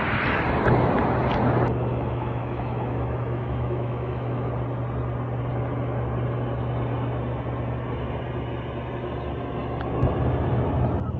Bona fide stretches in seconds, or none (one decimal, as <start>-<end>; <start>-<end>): 0.0-1.9; 4.5-11.2